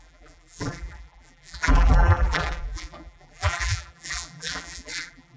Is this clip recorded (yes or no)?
no